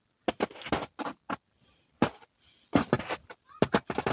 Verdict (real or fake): real